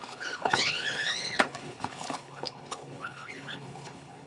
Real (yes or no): no